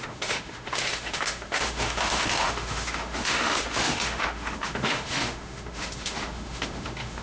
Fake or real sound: fake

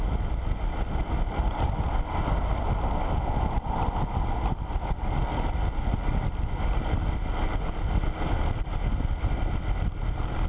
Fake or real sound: real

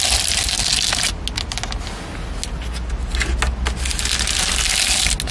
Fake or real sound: real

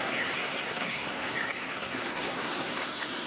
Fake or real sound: fake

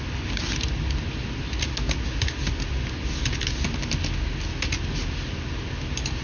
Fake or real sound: real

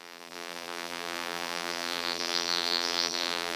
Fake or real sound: fake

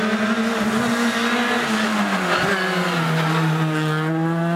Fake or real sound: real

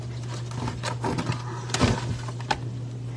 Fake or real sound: real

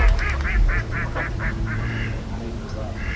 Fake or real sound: fake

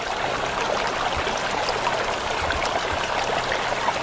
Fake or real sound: real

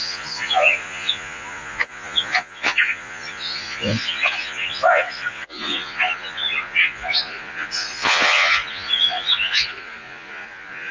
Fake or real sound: fake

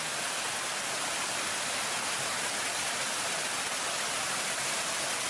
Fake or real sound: real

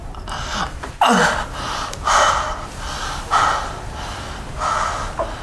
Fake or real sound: real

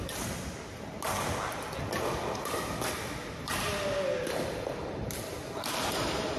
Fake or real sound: real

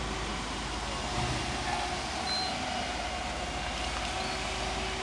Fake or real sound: real